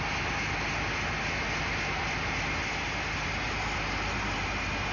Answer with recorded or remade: recorded